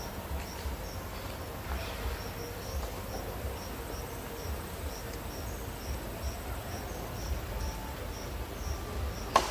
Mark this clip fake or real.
real